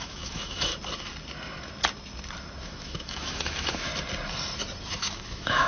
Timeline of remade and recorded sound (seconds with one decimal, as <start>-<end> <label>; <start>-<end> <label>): 0.0-0.7 remade; 0.7-2.6 recorded; 2.6-3.9 remade; 3.9-4.9 recorded; 4.9-5.7 remade